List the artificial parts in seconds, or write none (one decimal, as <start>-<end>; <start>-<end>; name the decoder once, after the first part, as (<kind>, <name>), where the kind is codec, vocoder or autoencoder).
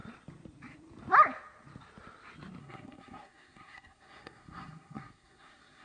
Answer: 2.6-5.8 (codec, SNAC)